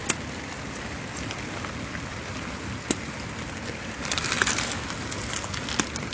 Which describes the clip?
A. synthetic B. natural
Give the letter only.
B